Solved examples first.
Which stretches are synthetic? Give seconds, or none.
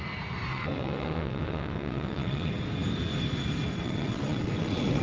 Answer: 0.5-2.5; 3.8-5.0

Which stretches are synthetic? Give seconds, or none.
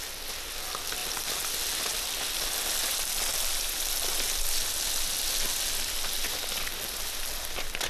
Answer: none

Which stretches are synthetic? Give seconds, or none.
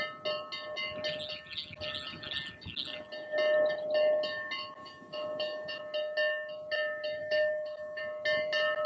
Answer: 4.8-5.8; 7.2-8.0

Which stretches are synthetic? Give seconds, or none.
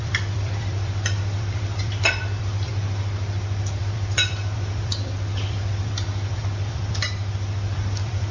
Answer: 0.0-2.7; 3.8-8.3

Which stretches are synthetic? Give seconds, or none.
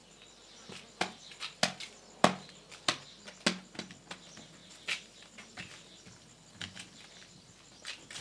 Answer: none